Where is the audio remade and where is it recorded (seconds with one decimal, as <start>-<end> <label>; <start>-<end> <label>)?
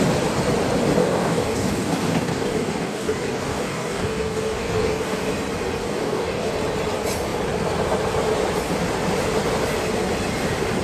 0.0-1.0 recorded; 1.0-5.3 remade; 5.3-5.8 recorded; 5.8-6.5 remade; 6.5-10.8 recorded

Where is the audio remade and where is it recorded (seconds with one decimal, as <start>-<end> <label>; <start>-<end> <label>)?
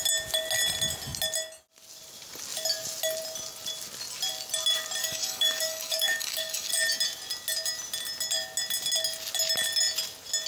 0.0-5.0 recorded; 5.0-6.7 remade; 6.7-10.5 recorded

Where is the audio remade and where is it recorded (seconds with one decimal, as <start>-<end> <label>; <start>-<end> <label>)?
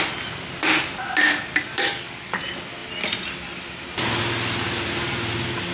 0.0-1.9 recorded; 1.9-2.4 remade; 2.4-5.7 recorded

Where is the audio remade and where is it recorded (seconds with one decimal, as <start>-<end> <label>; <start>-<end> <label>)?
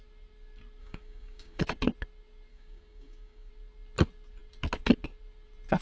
0.0-0.8 recorded; 0.8-1.6 remade; 1.6-2.5 recorded; 2.5-3.5 remade; 3.5-5.8 recorded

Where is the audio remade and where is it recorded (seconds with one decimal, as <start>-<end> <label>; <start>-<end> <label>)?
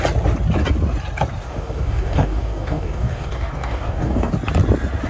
0.0-1.5 recorded; 1.5-4.3 remade; 4.3-5.1 recorded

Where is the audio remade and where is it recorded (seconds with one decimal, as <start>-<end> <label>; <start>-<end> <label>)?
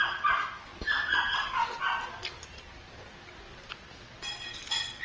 0.0-5.0 recorded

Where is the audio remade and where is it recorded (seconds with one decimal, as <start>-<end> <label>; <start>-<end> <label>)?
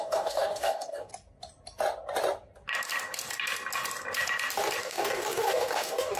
0.0-1.1 remade; 1.1-4.8 recorded; 4.8-6.2 remade